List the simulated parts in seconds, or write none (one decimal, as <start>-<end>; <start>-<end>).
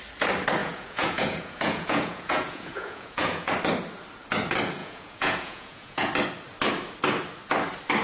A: 0.6-3.5; 4.8-6.1